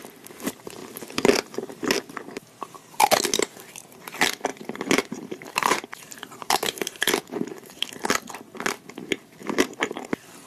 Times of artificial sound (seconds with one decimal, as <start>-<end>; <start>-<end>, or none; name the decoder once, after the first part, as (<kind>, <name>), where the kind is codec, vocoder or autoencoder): 0.8-2.0 (vocoder, BigVGAN v2); 4.5-7.9; 9.4-10.0